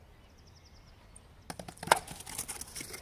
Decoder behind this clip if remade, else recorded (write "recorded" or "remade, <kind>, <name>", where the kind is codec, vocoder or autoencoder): recorded